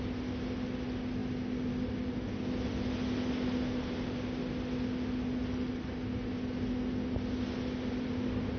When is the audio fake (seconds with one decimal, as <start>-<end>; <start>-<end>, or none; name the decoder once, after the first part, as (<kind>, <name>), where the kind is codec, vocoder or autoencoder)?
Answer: none